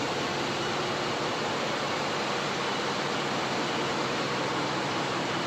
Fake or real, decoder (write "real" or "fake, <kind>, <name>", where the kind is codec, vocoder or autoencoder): fake, vocoder, BigVGAN v2